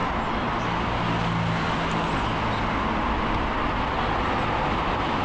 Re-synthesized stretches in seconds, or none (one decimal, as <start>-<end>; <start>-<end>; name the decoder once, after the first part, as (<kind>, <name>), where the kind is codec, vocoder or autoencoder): none